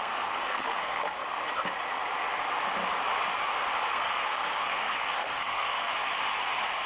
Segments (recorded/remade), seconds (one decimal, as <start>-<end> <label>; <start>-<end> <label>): 0.0-1.2 remade; 1.2-3.9 recorded; 3.9-5.9 remade; 5.9-6.9 recorded